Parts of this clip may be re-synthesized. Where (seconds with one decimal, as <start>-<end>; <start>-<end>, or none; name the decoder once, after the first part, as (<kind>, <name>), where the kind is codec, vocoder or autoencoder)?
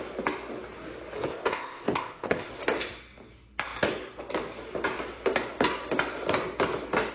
1.3-2.5 (codec, ZipCodec)